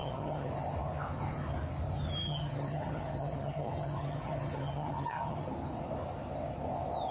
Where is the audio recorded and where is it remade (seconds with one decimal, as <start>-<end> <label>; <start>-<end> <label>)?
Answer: 0.0-0.5 remade; 0.5-2.2 recorded; 2.2-5.5 remade; 5.5-7.1 recorded